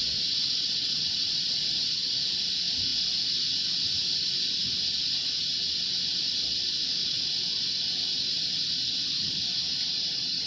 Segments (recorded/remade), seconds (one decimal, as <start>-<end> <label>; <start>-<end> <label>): 0.0-2.1 remade; 2.1-7.0 recorded; 7.0-7.8 remade; 7.8-10.5 recorded